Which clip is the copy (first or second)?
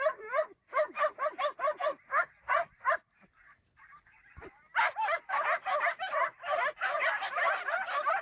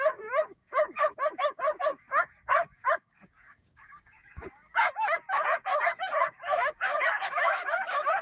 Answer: second